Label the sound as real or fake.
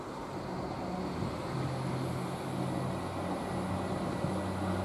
real